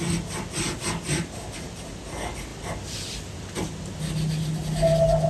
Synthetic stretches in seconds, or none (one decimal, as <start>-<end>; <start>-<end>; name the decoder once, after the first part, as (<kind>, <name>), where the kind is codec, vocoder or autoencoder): none